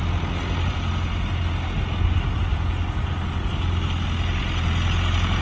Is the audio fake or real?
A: real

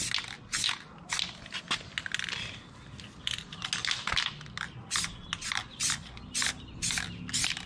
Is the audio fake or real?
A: real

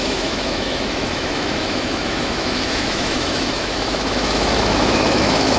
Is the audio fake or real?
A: fake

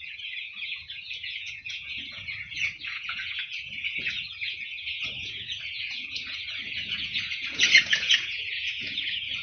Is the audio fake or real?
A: fake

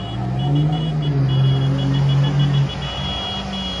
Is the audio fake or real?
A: real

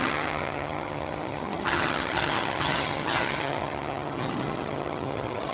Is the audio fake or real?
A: fake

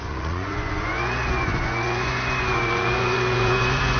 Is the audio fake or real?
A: fake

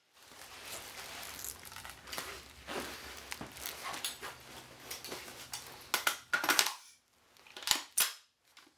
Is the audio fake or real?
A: real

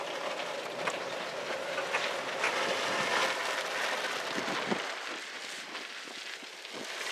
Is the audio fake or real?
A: real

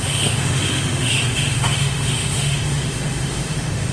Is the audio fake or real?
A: fake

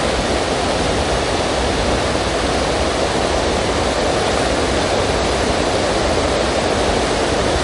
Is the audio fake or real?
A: real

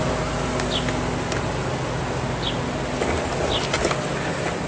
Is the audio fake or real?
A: real